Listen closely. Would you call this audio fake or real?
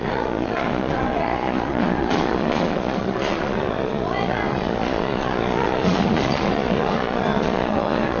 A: fake